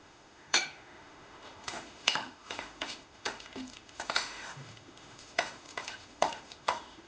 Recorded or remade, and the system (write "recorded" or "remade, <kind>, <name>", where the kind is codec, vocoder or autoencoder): remade, autoencoder, DAC-VAE